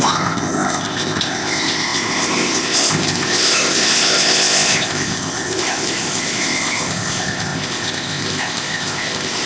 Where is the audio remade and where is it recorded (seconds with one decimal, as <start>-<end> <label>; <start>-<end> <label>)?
0.0-9.5 remade